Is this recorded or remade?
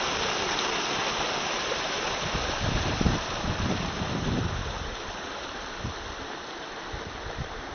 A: recorded